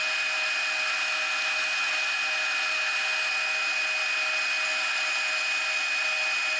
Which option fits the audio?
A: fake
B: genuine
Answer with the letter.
B